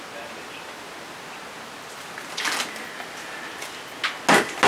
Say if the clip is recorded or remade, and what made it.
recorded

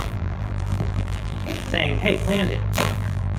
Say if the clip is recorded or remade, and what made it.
remade, vocoder, BigVGAN v2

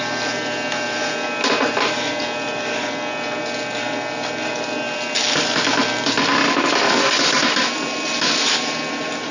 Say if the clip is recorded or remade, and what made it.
recorded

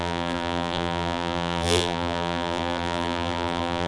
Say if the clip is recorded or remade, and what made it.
remade, vocoder, BigVGAN v2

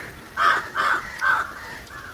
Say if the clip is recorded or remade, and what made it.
remade, vocoder, BigVGAN v2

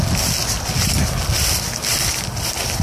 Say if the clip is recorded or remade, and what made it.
recorded